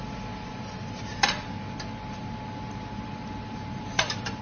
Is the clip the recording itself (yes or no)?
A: yes